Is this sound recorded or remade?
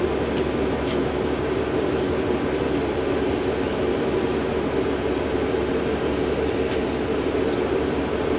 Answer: recorded